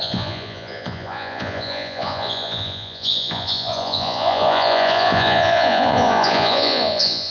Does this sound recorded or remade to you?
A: remade